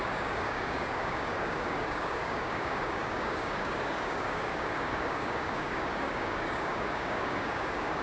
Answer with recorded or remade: remade